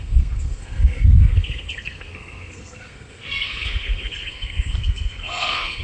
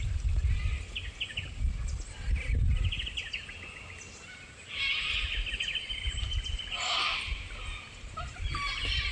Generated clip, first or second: first